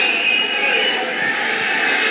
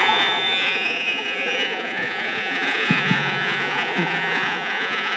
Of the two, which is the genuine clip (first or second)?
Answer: first